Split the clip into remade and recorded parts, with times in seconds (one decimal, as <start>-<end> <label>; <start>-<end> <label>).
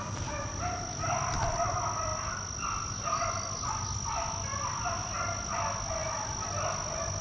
0.0-7.2 recorded